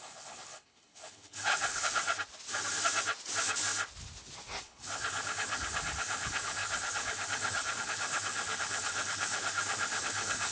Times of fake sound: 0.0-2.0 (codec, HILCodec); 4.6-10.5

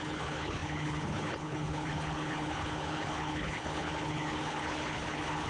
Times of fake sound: 0.0-5.5 (codec, HILCodec)

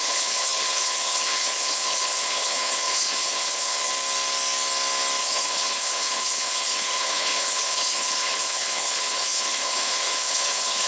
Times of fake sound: 0.0-3.9 (codec, HILCodec); 5.2-10.9

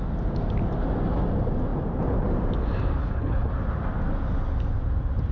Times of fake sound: 3.0-3.5 (codec, HILCodec)